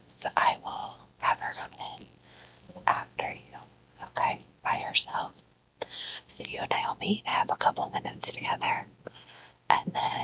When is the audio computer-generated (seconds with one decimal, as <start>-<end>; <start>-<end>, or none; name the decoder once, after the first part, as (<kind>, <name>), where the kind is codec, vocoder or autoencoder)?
0.8-1.7 (vocoder, BigVGAN v2)